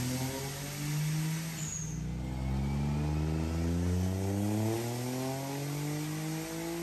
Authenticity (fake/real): real